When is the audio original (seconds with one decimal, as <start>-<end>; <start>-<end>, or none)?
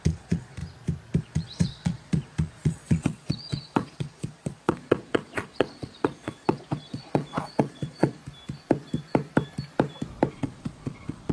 0.6-1.2; 8.2-10.3